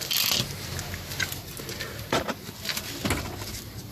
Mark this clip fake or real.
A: real